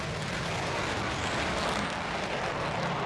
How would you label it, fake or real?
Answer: real